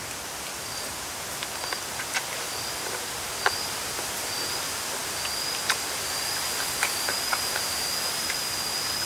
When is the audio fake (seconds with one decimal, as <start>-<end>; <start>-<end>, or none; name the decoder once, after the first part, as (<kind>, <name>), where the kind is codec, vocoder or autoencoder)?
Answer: none